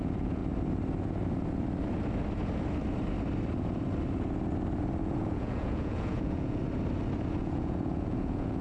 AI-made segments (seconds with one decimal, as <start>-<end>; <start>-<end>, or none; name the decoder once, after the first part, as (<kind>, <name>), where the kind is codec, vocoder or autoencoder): 0.0-0.4 (vocoder, Vocos); 5.0-6.6; 7.4-8.6